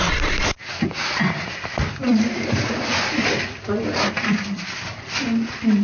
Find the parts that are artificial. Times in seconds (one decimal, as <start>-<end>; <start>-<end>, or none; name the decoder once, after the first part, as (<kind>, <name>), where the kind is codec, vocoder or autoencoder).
2.0-5.1 (vocoder, BigVGAN v2)